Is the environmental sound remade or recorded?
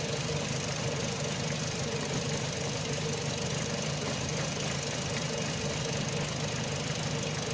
recorded